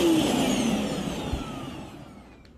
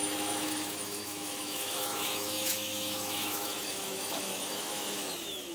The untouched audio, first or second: first